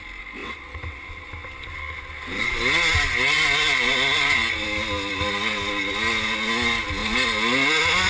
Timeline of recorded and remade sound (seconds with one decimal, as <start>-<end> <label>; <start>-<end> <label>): 0.0-0.4 recorded; 0.4-1.1 remade; 1.1-8.1 recorded